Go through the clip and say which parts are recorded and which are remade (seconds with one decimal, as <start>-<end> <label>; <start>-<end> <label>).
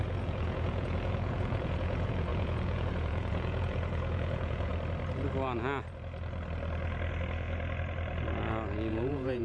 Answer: 0.0-4.7 remade; 4.7-8.9 recorded; 8.9-9.4 remade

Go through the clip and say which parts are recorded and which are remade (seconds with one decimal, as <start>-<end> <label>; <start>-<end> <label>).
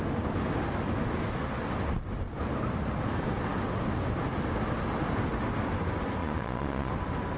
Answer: 0.0-6.2 recorded; 6.2-6.9 remade; 6.9-7.4 recorded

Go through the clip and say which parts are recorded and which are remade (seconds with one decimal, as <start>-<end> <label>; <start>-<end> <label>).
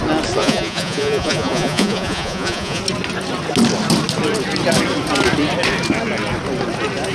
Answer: 0.0-0.4 recorded; 0.4-2.8 remade; 2.8-7.1 recorded